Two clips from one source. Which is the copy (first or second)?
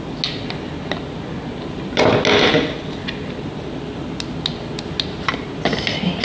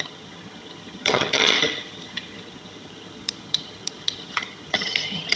second